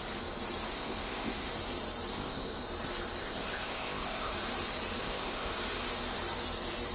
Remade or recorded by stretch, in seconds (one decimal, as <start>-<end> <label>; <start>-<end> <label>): 0.0-0.7 recorded; 0.7-1.5 remade; 1.5-2.1 recorded; 2.1-2.6 remade; 2.6-3.2 recorded; 3.2-4.3 remade; 4.3-5.0 recorded; 5.0-5.5 remade; 5.5-6.9 recorded